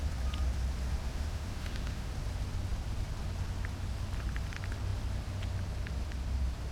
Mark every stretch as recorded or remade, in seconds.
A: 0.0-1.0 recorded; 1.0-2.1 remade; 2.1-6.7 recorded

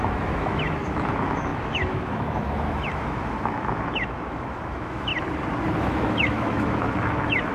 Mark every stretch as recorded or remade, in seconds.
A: 0.0-5.1 remade; 5.1-5.8 recorded; 5.8-7.5 remade

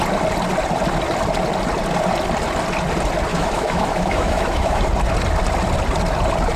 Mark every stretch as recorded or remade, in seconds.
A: 0.0-3.3 recorded; 3.3-4.8 remade; 4.8-6.6 recorded

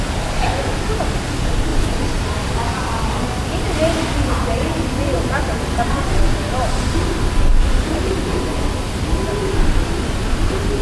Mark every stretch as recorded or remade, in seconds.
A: 0.0-10.8 recorded

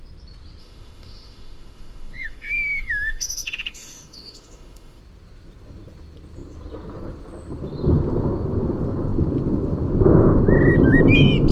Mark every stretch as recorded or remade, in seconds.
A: 0.0-0.6 recorded; 0.6-5.0 remade; 5.0-11.5 recorded